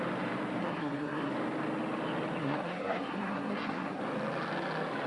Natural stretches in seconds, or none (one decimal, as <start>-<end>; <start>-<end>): 0.0-0.6; 1.3-2.4; 4.0-5.1